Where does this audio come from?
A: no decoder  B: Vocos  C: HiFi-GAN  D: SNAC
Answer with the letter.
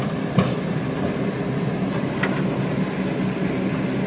A